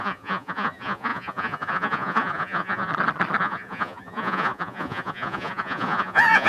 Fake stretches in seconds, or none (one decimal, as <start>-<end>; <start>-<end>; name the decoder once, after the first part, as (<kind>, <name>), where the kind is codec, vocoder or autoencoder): 0.0-2.9 (vocoder, Vocos); 3.4-6.5